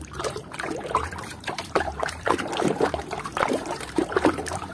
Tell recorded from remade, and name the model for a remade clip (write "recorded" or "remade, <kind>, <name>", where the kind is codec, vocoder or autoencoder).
remade, vocoder, BigVGAN v2